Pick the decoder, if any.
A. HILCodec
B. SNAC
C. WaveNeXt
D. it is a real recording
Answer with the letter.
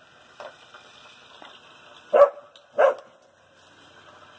D